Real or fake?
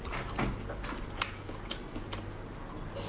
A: real